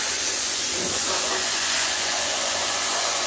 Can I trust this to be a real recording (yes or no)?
no